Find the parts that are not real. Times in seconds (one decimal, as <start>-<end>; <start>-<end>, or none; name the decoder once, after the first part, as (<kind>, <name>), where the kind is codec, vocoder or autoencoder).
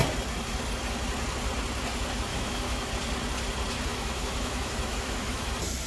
2.3-2.9 (autoencoder, DAC-VAE); 3.9-5.5